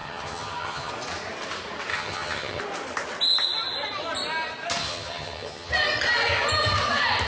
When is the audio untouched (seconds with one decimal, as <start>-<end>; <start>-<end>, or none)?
0.9-1.9; 2.6-4.8; 5.7-7.3

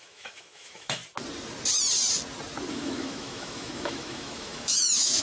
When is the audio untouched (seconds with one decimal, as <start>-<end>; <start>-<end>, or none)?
1.0-2.7

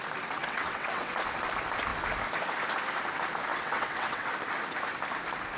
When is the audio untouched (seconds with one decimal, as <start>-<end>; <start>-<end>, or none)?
0.0-0.4; 1.2-3.5; 4.3-5.6

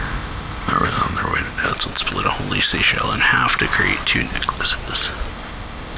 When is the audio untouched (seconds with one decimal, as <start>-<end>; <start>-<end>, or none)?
1.7-5.3

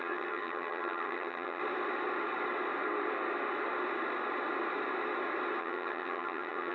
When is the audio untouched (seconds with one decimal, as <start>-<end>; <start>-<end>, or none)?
1.6-5.6

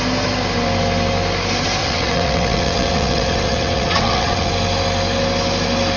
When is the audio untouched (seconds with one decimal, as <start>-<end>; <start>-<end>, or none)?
0.0-1.8; 4.5-6.0

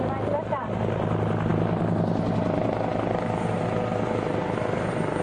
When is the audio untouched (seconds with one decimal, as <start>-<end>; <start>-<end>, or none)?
0.0-5.2

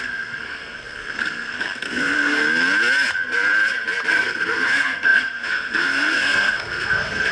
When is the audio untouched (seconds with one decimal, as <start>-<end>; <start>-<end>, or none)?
2.4-4.1